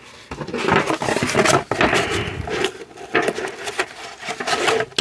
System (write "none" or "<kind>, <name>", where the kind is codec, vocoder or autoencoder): none